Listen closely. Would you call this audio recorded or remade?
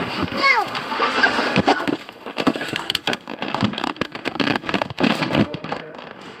remade